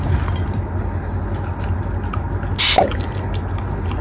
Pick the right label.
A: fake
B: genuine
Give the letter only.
B